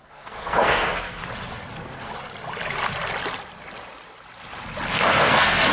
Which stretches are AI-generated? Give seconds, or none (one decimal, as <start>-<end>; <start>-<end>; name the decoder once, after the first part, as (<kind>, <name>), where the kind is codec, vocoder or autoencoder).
0.0-1.2 (codec, SNAC); 1.7-2.1; 4.9-5.7